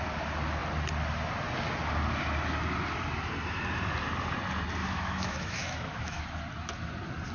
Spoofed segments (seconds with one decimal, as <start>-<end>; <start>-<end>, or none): 4.8-6.2